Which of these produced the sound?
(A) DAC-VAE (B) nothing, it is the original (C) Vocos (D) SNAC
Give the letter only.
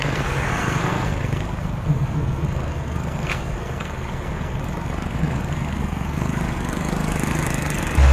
D